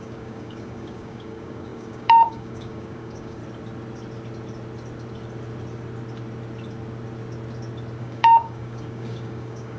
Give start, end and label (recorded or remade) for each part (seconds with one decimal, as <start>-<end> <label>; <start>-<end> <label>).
0.0-3.4 remade; 3.4-8.0 recorded; 8.0-9.8 remade